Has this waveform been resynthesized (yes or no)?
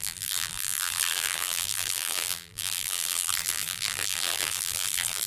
yes